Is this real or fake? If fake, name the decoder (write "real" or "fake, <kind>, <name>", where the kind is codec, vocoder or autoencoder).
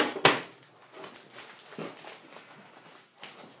real